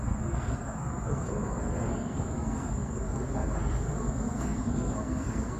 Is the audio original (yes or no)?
no